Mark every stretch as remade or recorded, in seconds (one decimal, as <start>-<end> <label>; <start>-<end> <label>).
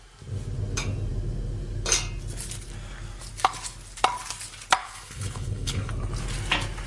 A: 0.0-4.8 recorded; 4.8-5.9 remade; 5.9-6.9 recorded